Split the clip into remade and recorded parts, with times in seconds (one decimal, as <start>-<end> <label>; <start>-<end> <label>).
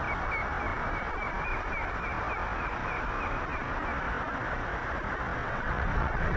0.0-5.4 recorded; 5.4-6.4 remade